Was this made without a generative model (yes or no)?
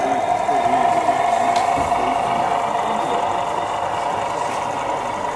yes